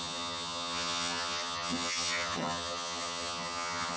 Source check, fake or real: fake